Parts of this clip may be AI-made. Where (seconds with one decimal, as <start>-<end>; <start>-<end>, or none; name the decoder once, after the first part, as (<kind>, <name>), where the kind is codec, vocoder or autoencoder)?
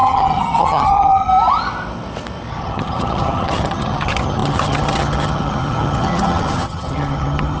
0.0-1.3 (vocoder, HiFi-GAN); 2.5-7.6